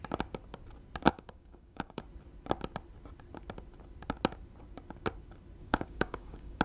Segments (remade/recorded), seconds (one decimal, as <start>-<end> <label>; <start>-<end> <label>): 0.0-1.1 recorded; 1.1-2.0 remade; 2.0-5.6 recorded; 5.6-6.6 remade